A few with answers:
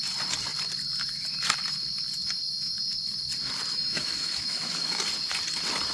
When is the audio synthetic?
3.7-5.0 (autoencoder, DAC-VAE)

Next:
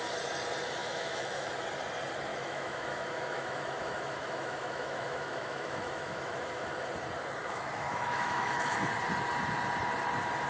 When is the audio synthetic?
0.8-1.5 (autoencoder, DAC-VAE); 2.3-6.7; 7.4-8.8

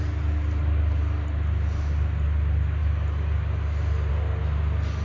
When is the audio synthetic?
none